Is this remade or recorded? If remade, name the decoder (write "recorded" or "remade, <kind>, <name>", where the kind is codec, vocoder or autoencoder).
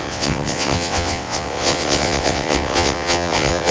remade, vocoder, WaveNeXt